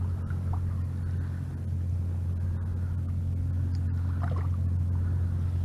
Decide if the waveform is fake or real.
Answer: real